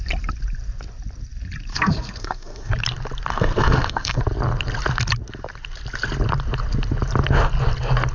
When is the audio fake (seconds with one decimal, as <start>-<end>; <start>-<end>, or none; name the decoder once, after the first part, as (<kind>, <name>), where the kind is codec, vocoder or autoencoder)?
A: 1.7-2.7 (codec, SNAC); 3.3-4.2